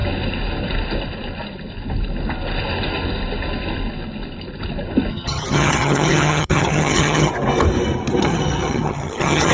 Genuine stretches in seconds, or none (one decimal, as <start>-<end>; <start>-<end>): 0.0-5.1; 7.3-8.2

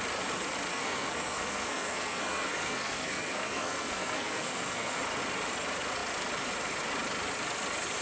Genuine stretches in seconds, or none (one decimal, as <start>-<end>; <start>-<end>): 0.0-0.7; 5.0-8.0

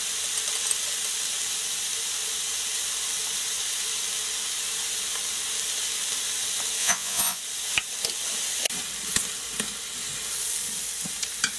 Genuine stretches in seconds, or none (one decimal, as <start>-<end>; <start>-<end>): 0.0-6.8; 7.4-11.6

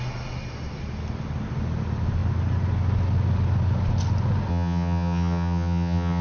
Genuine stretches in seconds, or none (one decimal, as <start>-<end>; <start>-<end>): 0.0-4.5

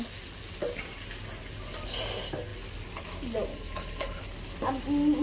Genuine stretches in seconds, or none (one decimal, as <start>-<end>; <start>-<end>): 0.0-3.5; 4.2-5.2